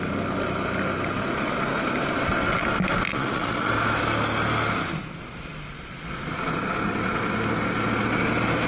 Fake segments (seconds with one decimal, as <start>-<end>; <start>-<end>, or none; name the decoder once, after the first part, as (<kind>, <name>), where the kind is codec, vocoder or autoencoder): 3.1-3.7 (vocoder, Vocos)